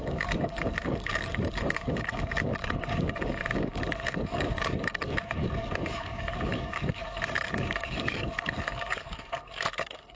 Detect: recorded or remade remade